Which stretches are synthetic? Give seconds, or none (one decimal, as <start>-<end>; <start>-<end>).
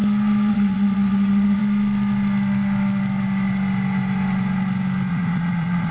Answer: 0.5-1.6; 5.1-5.9